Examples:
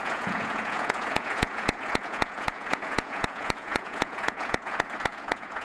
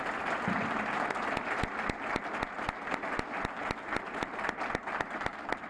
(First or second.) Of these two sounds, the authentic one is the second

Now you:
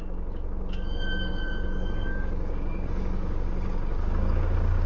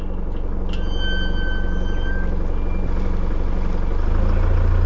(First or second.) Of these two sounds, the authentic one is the second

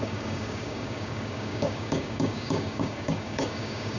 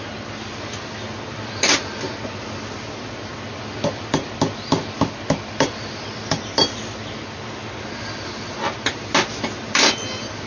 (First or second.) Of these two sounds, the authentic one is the second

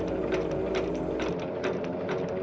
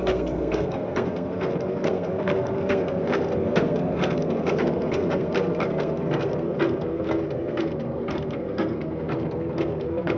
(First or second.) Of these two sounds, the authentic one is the first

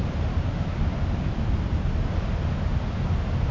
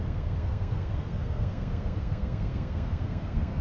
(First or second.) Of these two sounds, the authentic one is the first